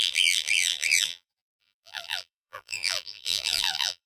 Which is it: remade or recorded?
remade